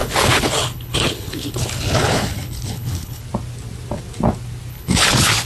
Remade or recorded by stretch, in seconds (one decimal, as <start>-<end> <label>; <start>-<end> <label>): 0.0-3.2 remade; 3.2-4.7 recorded; 4.7-5.5 remade